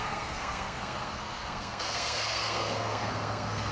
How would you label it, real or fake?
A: fake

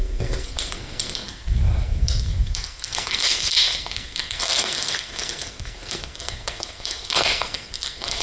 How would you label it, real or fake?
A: fake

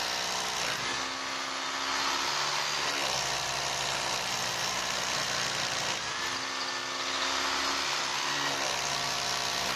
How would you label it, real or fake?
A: real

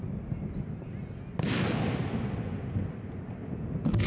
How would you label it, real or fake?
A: real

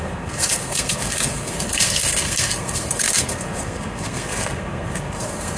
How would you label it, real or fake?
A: fake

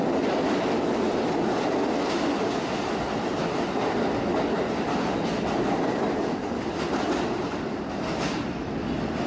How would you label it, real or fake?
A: real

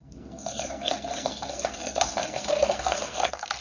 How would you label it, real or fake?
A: fake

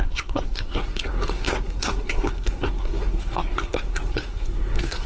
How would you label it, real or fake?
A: fake